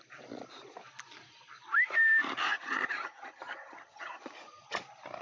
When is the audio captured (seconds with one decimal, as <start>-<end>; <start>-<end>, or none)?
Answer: 0.0-2.5; 4.2-5.2